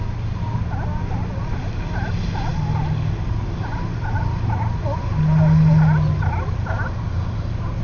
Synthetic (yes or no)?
no